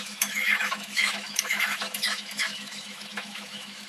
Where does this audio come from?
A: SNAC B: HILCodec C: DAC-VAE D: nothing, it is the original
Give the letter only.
C